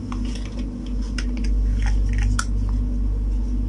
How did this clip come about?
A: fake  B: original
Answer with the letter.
B